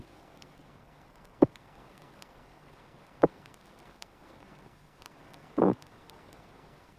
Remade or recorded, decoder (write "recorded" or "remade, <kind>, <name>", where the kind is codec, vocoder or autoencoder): remade, codec, SNAC